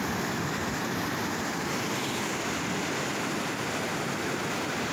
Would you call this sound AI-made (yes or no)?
no